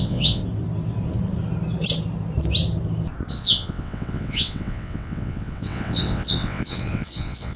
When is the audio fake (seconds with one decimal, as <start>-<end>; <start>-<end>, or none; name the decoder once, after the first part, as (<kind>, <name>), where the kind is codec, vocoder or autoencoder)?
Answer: 0.0-0.4 (vocoder, WaveNeXt); 3.3-7.6